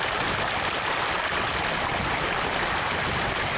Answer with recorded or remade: recorded